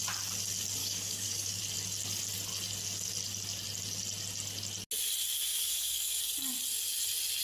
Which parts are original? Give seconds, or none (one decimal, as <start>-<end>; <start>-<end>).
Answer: 0.0-0.8; 1.6-5.5; 6.2-7.4

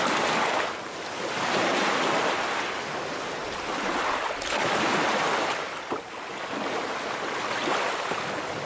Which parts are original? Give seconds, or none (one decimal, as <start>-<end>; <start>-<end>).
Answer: 0.0-8.7